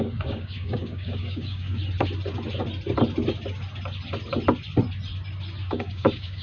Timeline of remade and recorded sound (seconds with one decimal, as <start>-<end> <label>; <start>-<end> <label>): 0.0-1.8 remade; 1.8-5.6 recorded; 5.6-6.4 remade